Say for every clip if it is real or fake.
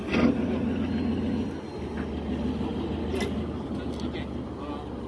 real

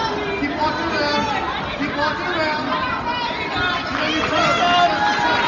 real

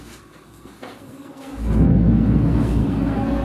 fake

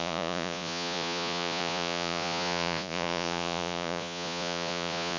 fake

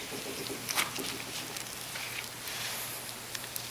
real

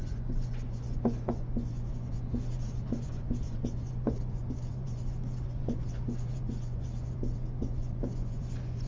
fake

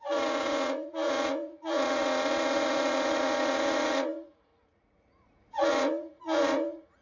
fake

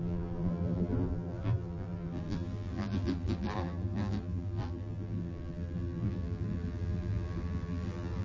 fake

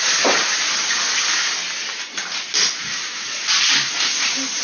real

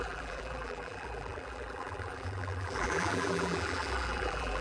fake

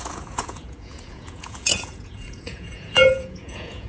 fake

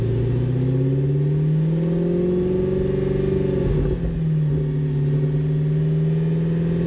real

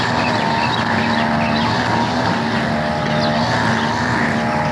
real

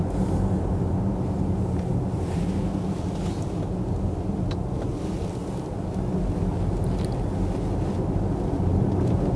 real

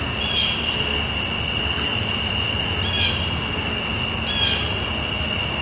real